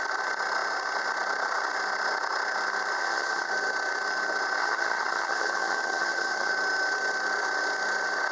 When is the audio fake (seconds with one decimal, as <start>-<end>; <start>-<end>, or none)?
3.0-3.5; 4.6-6.5